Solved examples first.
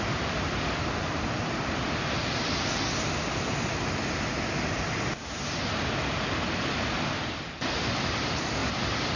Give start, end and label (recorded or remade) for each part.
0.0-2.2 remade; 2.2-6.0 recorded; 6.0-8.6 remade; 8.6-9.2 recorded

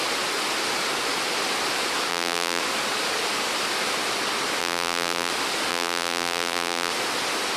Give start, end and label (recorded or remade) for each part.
0.0-2.1 recorded; 2.1-2.6 remade; 2.6-4.6 recorded; 4.6-5.3 remade; 5.3-5.7 recorded; 5.7-6.9 remade; 6.9-7.6 recorded

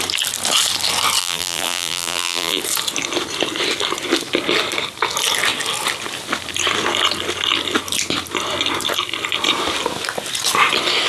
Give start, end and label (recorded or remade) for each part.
0.0-1.2 recorded; 1.2-2.6 remade; 2.6-11.1 recorded

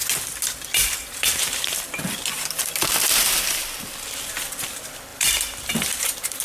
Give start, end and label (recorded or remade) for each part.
0.0-3.8 remade; 3.8-5.1 recorded; 5.1-5.7 remade; 5.7-6.4 recorded